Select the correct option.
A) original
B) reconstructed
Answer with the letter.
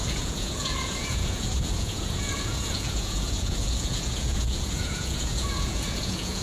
B